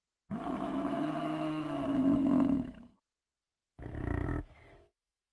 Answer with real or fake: fake